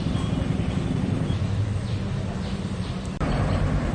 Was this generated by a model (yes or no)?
yes